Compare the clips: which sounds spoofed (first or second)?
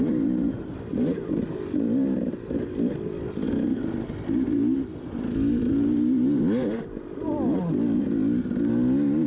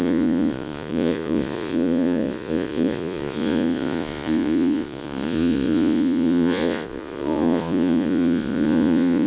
second